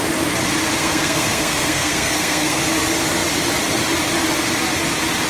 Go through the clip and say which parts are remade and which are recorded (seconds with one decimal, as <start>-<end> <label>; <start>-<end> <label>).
0.0-0.8 recorded; 0.8-2.6 remade; 2.6-5.3 recorded